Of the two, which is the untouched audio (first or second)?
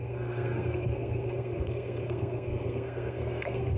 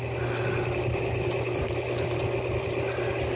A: second